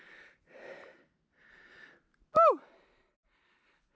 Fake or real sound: real